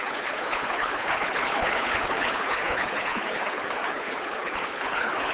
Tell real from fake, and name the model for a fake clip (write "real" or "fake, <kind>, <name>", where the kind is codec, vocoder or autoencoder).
fake, codec, HILCodec